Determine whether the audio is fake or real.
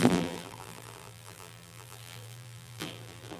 fake